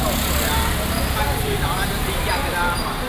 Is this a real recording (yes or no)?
yes